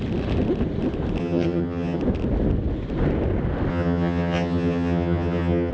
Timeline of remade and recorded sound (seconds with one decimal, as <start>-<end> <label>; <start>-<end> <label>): 0.0-1.2 recorded; 1.2-2.0 remade; 2.0-3.7 recorded; 3.7-5.7 remade

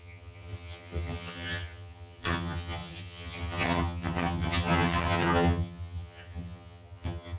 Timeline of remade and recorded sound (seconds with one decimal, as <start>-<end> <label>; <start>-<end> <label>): 0.0-7.4 remade

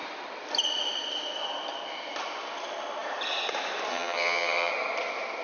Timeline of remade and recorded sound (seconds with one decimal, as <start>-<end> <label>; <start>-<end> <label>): 0.0-3.9 recorded; 3.9-4.7 remade; 4.7-5.4 recorded

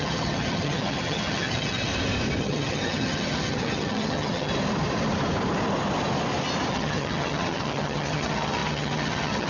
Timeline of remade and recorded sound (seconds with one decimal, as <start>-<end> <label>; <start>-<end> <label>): 0.0-1.9 remade; 1.9-2.4 recorded; 2.4-4.5 remade; 4.5-6.7 recorded; 6.7-9.5 remade

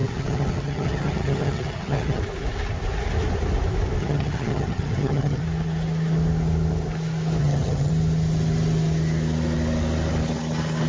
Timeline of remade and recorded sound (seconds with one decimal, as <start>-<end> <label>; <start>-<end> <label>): 0.0-2.2 remade; 2.2-4.0 recorded; 4.0-5.4 remade; 5.4-7.4 recorded; 7.4-7.9 remade; 7.9-10.9 recorded

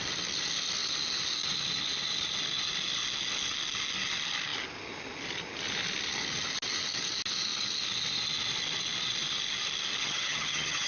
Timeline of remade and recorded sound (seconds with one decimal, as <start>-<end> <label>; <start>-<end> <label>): 0.0-10.0 recorded; 10.0-10.9 remade

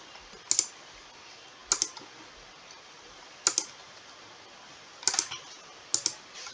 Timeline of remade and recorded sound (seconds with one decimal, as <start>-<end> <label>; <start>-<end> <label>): 0.0-6.5 recorded